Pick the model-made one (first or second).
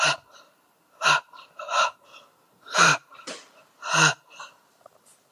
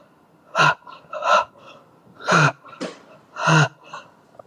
first